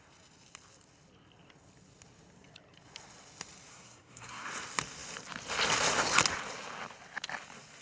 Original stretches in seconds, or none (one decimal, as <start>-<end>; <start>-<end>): 0.0-3.7; 4.5-7.8